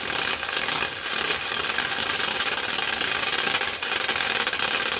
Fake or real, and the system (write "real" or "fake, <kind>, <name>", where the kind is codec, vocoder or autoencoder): fake, vocoder, BigVGAN v2